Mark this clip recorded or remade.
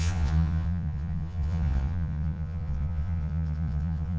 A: remade